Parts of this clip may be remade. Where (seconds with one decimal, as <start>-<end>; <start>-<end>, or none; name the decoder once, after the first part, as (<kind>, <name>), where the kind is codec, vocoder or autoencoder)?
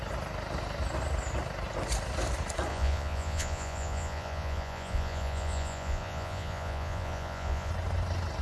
2.7-7.7 (vocoder, Vocos)